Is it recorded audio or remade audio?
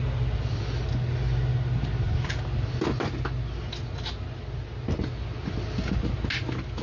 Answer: recorded